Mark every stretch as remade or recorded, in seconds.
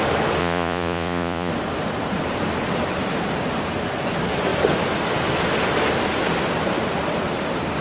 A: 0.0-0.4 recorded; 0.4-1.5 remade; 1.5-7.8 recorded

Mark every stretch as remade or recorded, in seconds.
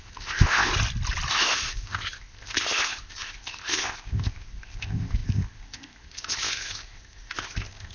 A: 0.0-0.7 remade; 0.7-1.3 recorded; 1.3-7.9 remade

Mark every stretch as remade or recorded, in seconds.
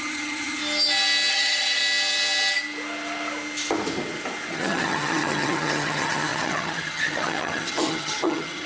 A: 0.0-0.6 remade; 0.6-1.3 recorded; 1.3-1.8 remade; 1.8-4.5 recorded; 4.5-8.7 remade